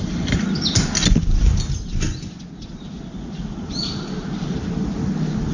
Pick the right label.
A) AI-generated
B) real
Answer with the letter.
B